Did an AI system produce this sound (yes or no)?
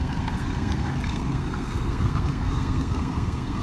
yes